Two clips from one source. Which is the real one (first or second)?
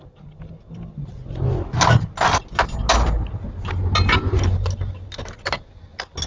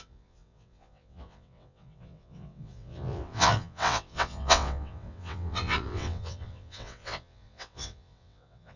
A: first